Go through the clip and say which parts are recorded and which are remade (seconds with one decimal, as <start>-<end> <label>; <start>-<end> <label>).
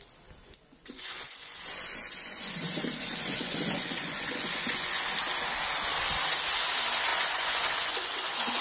0.0-0.4 recorded; 0.4-5.0 remade; 5.0-7.1 recorded; 7.1-8.6 remade